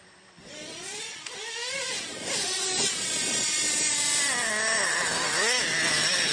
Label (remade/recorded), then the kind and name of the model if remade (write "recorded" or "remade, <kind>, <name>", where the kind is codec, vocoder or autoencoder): recorded